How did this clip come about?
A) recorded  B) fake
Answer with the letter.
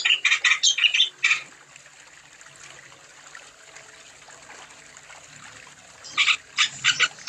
A